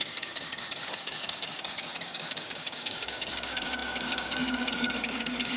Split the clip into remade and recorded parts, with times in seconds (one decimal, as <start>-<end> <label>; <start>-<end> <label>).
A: 0.0-5.6 remade